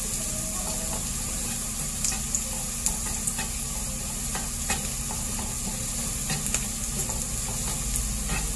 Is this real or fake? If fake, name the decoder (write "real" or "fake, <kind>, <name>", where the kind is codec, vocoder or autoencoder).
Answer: real